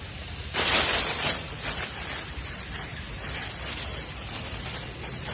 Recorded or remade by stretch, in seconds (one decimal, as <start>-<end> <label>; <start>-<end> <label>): 0.0-5.3 recorded

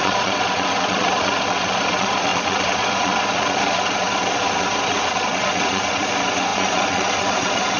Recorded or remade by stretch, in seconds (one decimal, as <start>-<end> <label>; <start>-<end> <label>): 0.0-7.8 remade

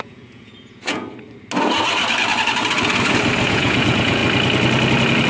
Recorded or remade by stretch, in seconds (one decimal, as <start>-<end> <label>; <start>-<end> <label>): 0.0-1.0 remade; 1.0-3.5 recorded; 3.5-4.2 remade; 4.2-5.3 recorded

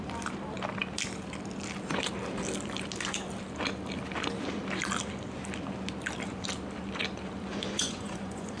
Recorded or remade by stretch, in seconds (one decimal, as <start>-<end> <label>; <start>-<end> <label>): 0.0-7.5 recorded; 7.5-8.6 remade